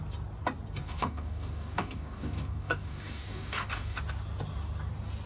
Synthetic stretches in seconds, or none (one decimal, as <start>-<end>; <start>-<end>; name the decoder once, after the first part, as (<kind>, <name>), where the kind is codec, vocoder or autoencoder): 0.8-4.0 (codec, DAC)